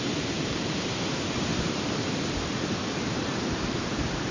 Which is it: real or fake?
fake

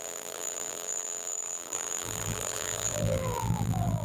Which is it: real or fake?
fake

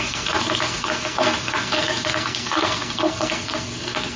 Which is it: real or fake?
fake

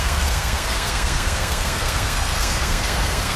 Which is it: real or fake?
fake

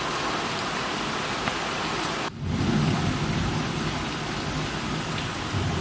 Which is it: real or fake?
real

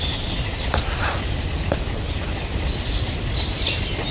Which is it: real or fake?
real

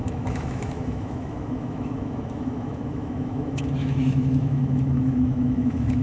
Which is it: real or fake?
fake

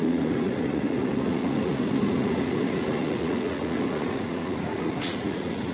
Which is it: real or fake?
fake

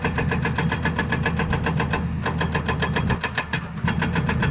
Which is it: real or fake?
real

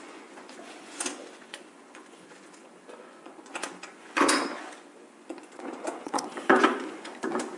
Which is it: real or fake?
fake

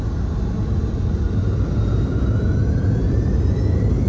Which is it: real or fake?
real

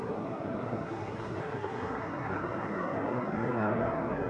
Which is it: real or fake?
fake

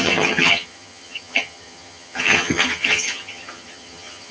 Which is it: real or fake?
fake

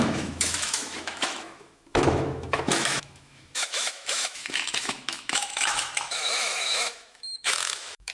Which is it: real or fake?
fake